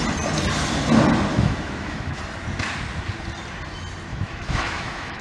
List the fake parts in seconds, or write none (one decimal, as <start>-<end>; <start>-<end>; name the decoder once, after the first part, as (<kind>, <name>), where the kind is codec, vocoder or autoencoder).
1.3-2.2 (autoencoder, DAC-VAE); 4.1-5.2